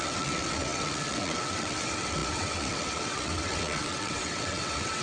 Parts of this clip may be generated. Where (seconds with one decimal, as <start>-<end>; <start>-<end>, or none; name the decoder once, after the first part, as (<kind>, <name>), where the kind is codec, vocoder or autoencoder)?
0.0-5.0 (vocoder, WaveNeXt)